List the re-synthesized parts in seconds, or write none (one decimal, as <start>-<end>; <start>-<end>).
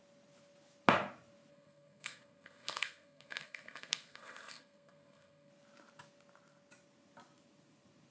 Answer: 1.5-5.5